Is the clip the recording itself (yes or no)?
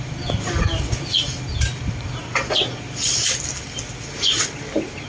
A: yes